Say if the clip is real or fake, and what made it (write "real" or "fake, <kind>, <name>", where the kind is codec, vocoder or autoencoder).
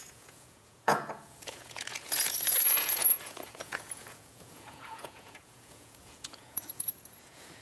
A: fake, vocoder, Vocos